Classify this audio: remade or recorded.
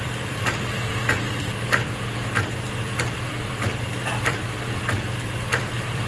remade